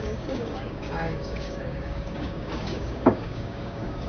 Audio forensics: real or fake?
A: fake